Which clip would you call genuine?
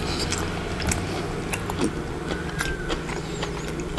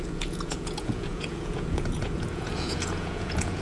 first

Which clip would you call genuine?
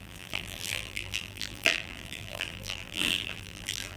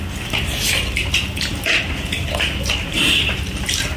second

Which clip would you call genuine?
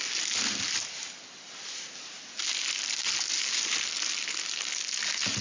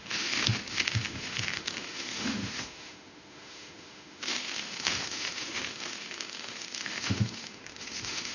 first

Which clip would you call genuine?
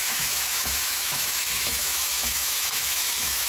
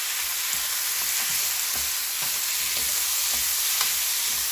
second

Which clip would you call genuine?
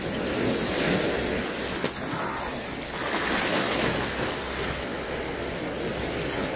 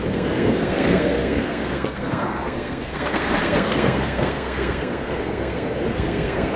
first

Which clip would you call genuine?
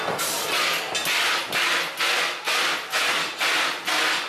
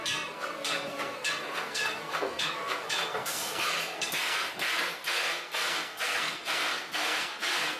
first